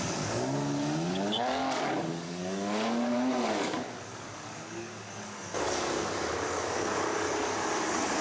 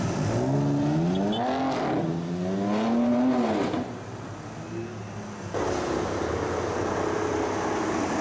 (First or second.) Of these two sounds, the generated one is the first